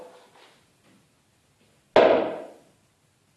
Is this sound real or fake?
real